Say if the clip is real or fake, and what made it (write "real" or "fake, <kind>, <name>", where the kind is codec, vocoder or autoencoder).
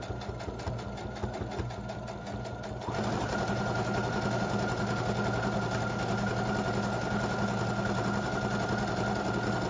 real